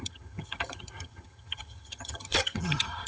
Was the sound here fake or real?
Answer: fake